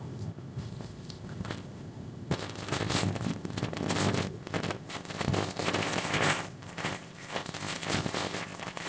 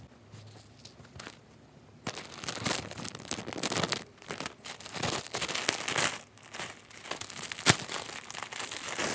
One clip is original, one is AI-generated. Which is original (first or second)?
second